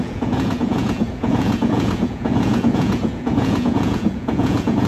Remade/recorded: remade